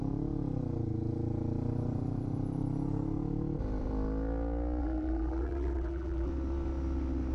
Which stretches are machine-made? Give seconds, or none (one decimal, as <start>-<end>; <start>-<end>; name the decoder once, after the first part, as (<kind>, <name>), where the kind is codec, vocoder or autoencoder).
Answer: 4.8-6.3 (vocoder, BigVGAN v2)